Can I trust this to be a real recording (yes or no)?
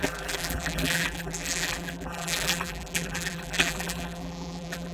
no